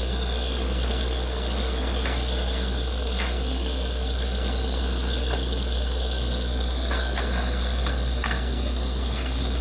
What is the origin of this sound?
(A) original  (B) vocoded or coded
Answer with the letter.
B